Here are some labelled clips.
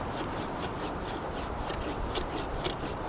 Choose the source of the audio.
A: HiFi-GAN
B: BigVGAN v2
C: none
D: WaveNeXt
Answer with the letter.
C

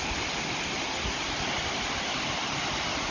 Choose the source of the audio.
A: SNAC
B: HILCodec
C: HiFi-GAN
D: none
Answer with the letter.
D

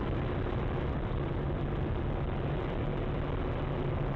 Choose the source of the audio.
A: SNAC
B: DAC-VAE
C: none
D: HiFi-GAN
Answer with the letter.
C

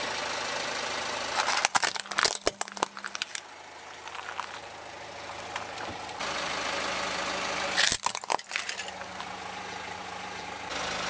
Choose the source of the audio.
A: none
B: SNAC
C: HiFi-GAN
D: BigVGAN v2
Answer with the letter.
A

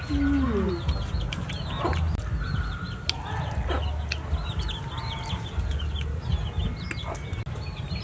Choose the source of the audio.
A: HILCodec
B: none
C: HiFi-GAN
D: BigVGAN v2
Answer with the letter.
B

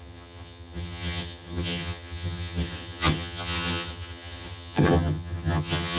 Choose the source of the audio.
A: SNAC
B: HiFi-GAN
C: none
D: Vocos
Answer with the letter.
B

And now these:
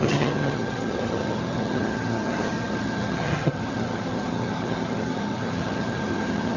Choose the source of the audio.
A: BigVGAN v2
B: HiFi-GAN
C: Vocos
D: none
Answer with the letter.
B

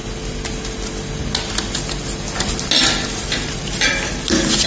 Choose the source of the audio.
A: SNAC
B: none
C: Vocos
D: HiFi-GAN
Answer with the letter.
B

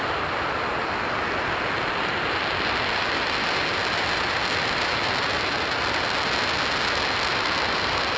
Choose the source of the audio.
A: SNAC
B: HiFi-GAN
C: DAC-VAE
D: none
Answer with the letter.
D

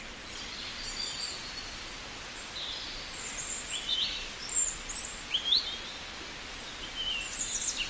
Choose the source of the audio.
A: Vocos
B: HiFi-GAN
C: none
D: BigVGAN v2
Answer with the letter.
C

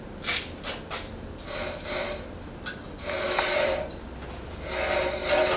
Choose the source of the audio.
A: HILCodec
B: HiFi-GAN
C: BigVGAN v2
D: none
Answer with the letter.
D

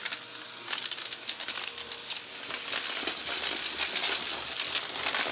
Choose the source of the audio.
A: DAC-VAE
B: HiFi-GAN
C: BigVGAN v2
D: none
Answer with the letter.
D